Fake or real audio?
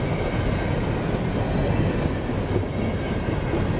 real